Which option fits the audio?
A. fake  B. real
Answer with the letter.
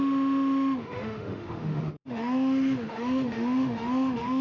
A